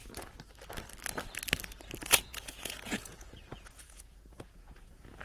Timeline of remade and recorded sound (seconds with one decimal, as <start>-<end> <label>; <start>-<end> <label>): 0.0-2.0 recorded; 2.0-5.2 remade